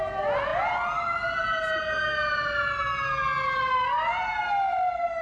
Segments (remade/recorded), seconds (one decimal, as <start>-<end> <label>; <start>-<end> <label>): 0.0-5.2 recorded